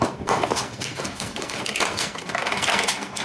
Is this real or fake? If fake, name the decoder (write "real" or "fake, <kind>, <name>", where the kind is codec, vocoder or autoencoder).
fake, codec, SNAC